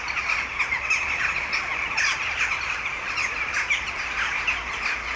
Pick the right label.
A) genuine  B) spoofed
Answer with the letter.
A